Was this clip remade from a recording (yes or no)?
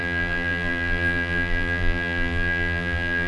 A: yes